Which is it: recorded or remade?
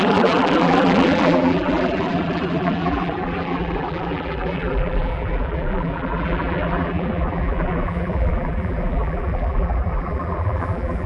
remade